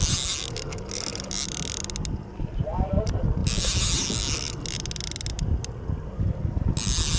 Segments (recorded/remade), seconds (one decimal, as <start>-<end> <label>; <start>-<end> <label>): 0.0-7.2 recorded